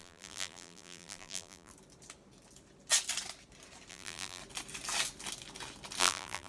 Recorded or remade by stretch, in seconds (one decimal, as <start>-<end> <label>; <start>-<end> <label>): 0.0-1.7 remade; 1.7-3.9 recorded; 3.9-4.4 remade; 4.4-6.0 recorded; 6.0-6.5 remade